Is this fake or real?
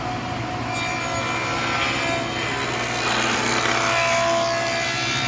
real